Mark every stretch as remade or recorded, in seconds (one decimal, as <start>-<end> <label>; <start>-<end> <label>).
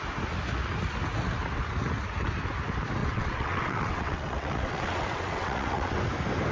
0.0-3.0 recorded; 3.0-6.0 remade; 6.0-6.5 recorded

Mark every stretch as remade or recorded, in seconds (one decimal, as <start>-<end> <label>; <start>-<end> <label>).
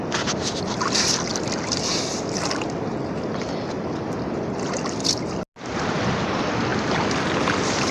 0.0-7.9 recorded